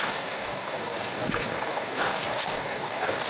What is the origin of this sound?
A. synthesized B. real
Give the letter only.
A